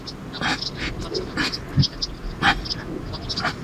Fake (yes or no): no